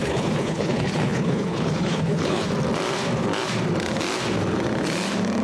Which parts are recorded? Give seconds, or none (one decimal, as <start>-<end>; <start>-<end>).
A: 2.5-5.4